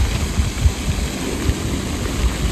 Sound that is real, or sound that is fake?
real